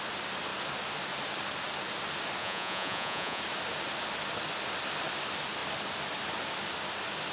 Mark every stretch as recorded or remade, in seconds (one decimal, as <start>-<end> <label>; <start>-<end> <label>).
0.0-2.4 recorded; 2.4-3.4 remade; 3.4-7.3 recorded